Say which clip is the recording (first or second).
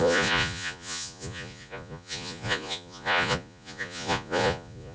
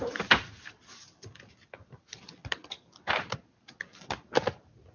second